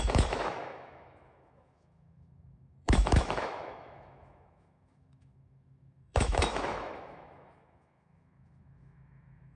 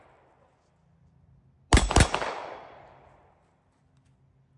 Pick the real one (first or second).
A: second